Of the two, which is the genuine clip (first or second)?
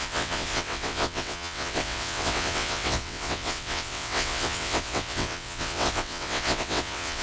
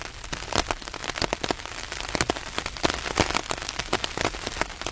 second